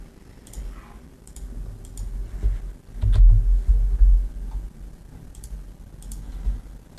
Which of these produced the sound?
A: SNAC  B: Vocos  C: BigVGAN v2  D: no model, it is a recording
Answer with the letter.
D